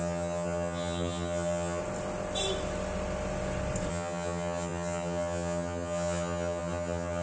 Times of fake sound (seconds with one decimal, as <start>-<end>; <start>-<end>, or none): 0.0-1.8; 3.9-7.2